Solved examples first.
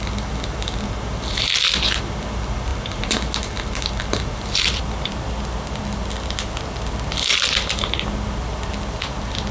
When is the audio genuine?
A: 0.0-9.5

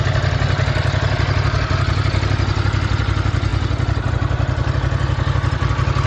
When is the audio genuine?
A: 0.0-6.1